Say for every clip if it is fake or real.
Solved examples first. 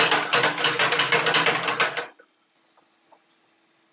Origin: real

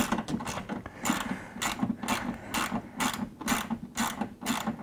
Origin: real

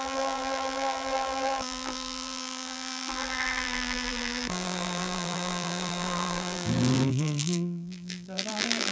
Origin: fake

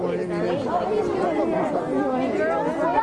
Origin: real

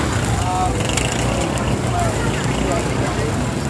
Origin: real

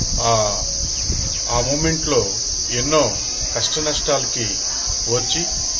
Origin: real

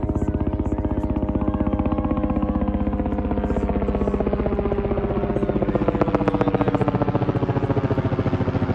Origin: real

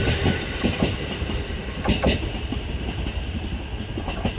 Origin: real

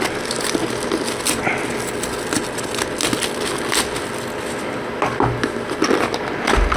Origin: real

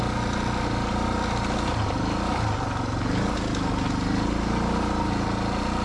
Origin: real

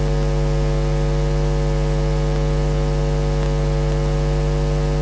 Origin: real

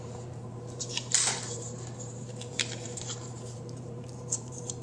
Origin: fake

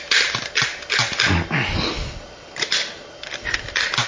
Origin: real